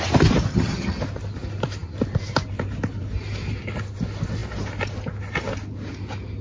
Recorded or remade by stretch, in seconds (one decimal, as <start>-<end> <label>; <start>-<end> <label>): 0.0-0.5 recorded; 0.5-1.0 remade; 1.0-6.4 recorded